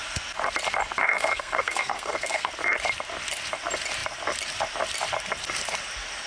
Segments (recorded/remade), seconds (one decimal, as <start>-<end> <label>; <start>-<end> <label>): 0.0-1.0 recorded; 1.0-2.5 remade; 2.5-6.3 recorded

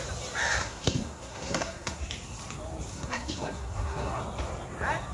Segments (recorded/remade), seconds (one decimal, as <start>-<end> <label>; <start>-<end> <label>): 0.0-0.6 recorded; 0.6-2.1 remade; 2.1-2.9 recorded; 2.9-4.2 remade; 4.2-5.1 recorded

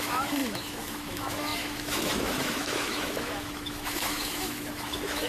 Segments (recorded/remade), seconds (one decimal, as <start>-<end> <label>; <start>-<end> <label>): 0.0-5.3 remade

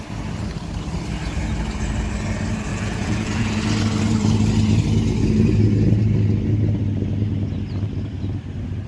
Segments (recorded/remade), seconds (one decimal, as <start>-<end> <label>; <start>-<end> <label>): 0.0-2.7 recorded; 2.7-3.5 remade; 3.5-8.9 recorded

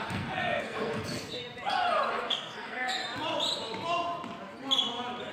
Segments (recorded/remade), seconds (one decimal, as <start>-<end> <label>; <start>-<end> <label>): 0.0-1.4 remade; 1.4-2.1 recorded; 2.1-3.0 remade; 3.0-5.3 recorded

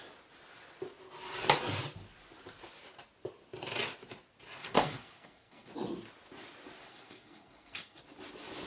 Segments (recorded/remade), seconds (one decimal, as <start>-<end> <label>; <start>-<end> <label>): 0.0-4.6 recorded; 4.6-5.7 remade; 5.7-6.9 recorded; 6.9-8.0 remade; 8.0-8.7 recorded